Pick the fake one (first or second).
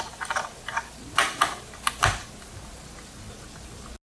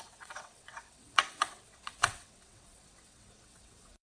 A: second